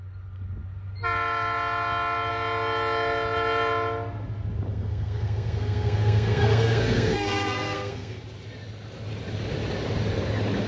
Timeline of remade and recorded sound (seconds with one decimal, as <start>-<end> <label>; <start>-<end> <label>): 0.0-4.7 recorded; 4.7-8.2 remade; 8.2-10.7 recorded